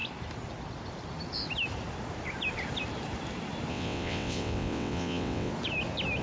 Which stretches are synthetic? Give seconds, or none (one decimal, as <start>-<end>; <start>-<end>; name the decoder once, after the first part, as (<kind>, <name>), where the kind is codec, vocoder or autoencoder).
3.7-5.5 (vocoder, WaveNeXt)